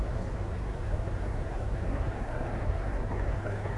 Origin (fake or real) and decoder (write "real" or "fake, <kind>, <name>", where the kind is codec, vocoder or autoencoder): fake, codec, SNAC